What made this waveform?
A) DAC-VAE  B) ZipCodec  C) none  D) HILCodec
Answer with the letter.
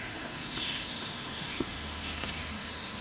A